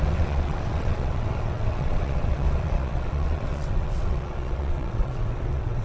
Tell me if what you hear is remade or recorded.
remade